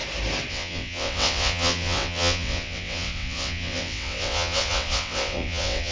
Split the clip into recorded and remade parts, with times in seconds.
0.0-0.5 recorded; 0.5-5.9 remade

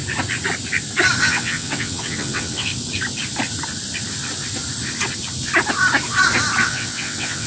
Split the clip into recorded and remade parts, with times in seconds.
0.0-1.2 recorded; 1.2-2.7 remade; 2.7-6.6 recorded; 6.6-7.5 remade

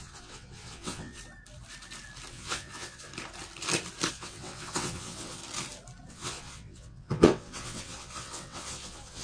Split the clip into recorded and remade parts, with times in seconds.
0.0-1.2 remade; 1.2-2.3 recorded; 2.3-3.1 remade; 3.1-4.1 recorded; 4.1-5.4 remade; 5.4-6.1 recorded; 6.1-9.2 remade

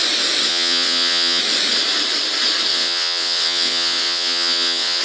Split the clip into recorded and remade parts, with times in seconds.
0.0-0.5 recorded; 0.5-1.4 remade; 1.4-2.7 recorded; 2.7-5.0 remade

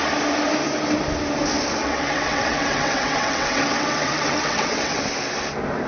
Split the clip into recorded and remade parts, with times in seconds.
0.0-1.8 recorded; 1.8-5.0 remade; 5.0-5.9 recorded

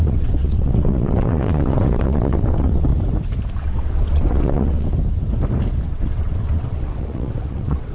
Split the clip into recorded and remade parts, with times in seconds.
0.0-2.9 remade; 2.9-3.5 recorded; 3.5-4.9 remade; 4.9-5.9 recorded; 5.9-7.9 remade

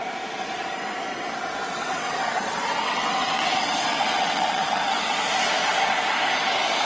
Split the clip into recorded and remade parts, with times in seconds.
0.0-1.1 recorded; 1.1-5.2 remade; 5.2-6.9 recorded

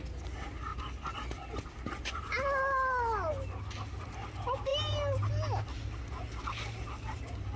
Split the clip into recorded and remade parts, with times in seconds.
0.0-7.6 recorded